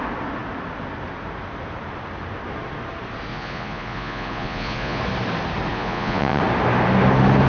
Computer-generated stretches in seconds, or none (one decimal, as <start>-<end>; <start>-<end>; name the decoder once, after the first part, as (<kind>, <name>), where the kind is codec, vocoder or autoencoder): 3.3-5.0 (vocoder, Vocos); 5.7-6.4